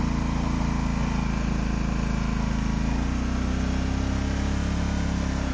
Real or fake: real